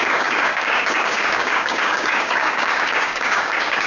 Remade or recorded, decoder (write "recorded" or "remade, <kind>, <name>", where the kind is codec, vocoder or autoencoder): remade, codec, DAC